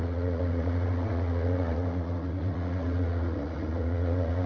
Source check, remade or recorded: remade